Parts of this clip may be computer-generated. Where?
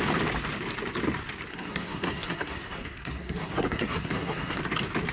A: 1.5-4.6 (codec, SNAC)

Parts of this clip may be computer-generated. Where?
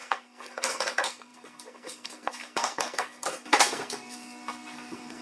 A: 0.0-5.2 (codec, SNAC)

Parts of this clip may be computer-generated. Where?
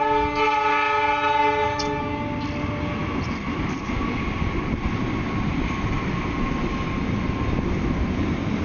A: none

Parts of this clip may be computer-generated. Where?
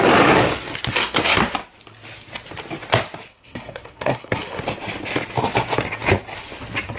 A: 0.9-1.4 (codec, SNAC); 3.3-4.6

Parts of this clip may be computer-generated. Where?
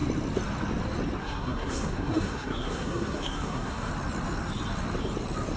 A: 1.2-3.9 (codec, SNAC)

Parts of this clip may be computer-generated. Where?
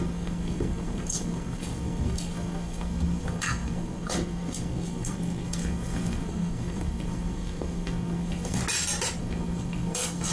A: 0.0-8.6 (codec, SNAC); 9.2-10.3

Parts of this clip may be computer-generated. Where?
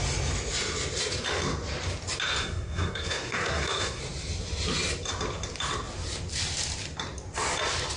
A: 2.4-4.0 (codec, SNAC)